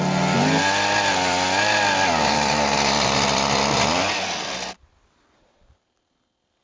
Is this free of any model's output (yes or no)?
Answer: yes